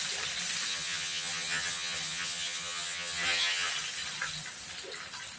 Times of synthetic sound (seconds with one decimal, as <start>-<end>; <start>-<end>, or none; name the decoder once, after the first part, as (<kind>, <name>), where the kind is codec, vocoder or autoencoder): 0.7-3.7 (vocoder, HiFi-GAN)